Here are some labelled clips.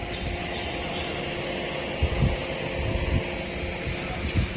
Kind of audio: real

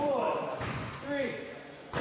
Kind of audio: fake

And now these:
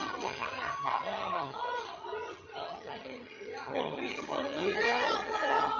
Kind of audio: fake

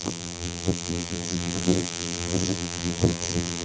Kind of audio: fake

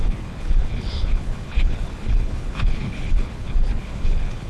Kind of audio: fake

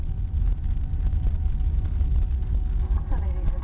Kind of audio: real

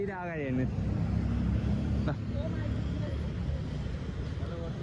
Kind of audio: real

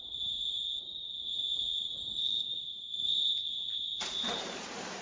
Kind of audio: fake